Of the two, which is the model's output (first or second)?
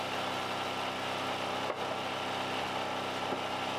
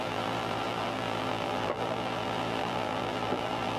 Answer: second